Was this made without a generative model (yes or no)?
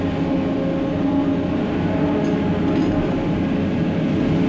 yes